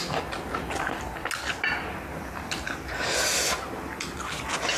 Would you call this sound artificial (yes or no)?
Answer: no